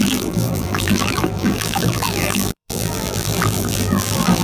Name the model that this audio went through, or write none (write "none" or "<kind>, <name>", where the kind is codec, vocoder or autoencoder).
vocoder, BigVGAN v2